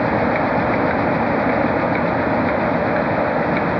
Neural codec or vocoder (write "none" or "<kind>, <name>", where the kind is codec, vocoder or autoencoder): none